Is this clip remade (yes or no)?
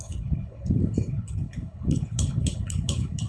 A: yes